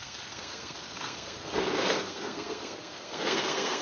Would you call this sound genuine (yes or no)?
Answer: no